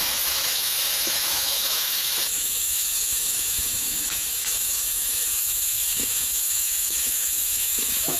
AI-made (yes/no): yes